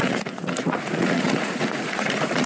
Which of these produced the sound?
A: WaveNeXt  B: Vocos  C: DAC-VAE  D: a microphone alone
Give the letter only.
B